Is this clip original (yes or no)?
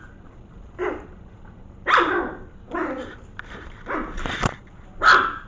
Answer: no